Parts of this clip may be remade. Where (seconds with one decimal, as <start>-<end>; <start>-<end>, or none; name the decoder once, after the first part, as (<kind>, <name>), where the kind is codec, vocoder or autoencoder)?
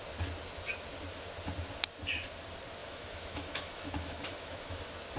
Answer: 2.8-4.8 (autoencoder, DAC-VAE)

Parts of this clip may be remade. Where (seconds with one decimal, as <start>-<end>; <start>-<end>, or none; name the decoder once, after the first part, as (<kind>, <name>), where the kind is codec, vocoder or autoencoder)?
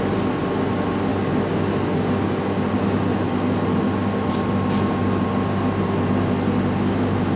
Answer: none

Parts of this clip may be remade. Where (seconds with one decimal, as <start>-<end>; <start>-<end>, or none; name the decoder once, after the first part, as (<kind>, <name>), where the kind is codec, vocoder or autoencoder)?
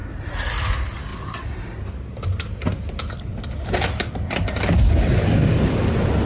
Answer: none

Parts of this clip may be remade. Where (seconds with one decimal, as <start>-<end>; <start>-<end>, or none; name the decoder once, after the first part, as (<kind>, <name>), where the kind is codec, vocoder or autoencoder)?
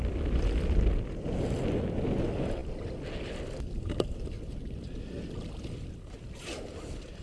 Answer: none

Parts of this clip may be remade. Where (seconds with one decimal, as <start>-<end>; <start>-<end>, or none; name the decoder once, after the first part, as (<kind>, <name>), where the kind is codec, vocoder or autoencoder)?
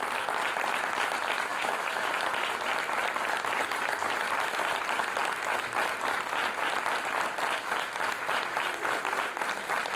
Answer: 1.5-2.1 (autoencoder, DAC-VAE)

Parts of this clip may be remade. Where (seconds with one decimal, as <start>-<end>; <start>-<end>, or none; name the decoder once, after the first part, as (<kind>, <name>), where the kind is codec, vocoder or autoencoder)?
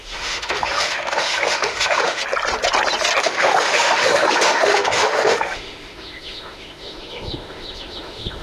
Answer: 0.0-2.2 (autoencoder, DAC-VAE); 3.2-8.4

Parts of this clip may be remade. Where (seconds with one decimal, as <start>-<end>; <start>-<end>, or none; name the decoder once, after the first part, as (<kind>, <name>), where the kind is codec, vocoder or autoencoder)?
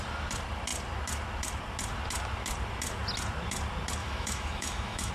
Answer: 4.0-5.1 (autoencoder, DAC-VAE)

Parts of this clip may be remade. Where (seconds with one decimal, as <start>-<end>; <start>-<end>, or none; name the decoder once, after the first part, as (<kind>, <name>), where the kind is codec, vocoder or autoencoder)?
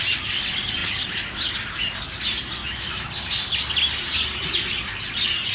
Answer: 2.6-3.1 (autoencoder, DAC-VAE)